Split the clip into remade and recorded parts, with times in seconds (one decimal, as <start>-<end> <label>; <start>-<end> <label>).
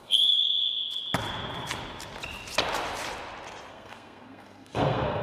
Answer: 0.0-0.6 remade; 0.6-3.7 recorded; 3.7-5.2 remade